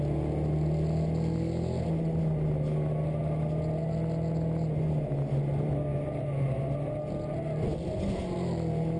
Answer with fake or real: real